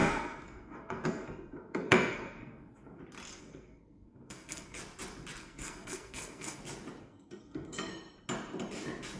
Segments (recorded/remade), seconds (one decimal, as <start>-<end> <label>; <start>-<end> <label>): 0.0-3.0 remade; 3.0-3.4 recorded; 3.4-4.8 remade; 4.8-5.4 recorded; 5.4-6.6 remade; 6.6-7.0 recorded; 7.0-7.9 remade; 7.9-9.2 recorded